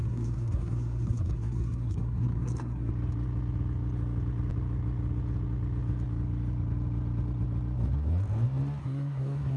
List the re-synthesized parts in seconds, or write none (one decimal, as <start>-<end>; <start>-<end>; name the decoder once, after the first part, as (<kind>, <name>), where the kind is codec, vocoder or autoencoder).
0.0-2.9 (codec, SNAC); 8.8-9.6